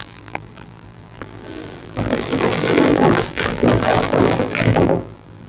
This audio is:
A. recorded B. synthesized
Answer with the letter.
B